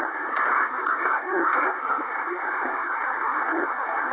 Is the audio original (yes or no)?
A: no